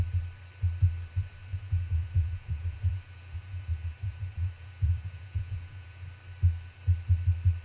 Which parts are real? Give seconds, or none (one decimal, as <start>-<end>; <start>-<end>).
0.0-1.5; 6.1-7.6